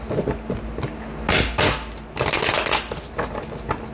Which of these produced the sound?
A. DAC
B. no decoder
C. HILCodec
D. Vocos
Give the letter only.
B